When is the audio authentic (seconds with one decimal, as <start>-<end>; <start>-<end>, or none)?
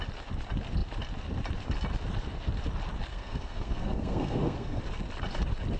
0.0-3.1; 4.8-5.8